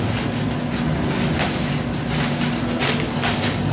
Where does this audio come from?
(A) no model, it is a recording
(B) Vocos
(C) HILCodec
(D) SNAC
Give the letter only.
A